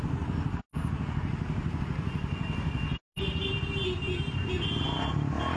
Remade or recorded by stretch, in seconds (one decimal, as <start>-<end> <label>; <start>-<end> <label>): 0.0-5.6 recorded